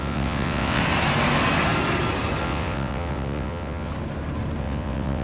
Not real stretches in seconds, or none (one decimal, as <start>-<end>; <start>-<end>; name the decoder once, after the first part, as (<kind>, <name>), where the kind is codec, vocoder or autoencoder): 0.0-0.8 (vocoder, WaveNeXt); 2.4-3.9; 4.6-5.2